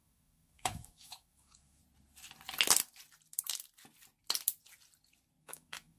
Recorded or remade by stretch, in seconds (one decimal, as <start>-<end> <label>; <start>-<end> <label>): 0.0-1.8 remade; 1.8-5.4 recorded; 5.4-6.0 remade